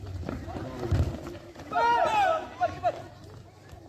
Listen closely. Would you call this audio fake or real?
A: real